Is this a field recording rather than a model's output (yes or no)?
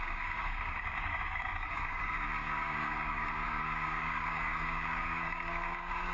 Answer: no